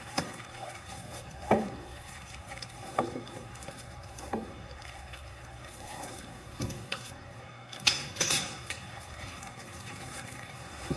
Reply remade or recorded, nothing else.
remade